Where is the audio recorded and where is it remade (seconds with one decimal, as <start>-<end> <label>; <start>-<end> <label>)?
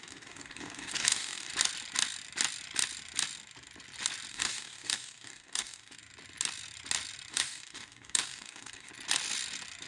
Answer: 0.0-1.5 remade; 1.5-4.3 recorded; 4.3-6.0 remade; 6.0-7.3 recorded; 7.3-8.9 remade; 8.9-9.9 recorded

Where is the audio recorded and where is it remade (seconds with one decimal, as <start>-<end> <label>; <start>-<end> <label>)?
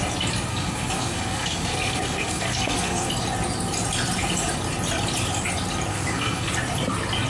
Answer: 0.0-0.5 recorded; 0.5-3.1 remade; 3.1-5.9 recorded; 5.9-6.5 remade; 6.5-7.3 recorded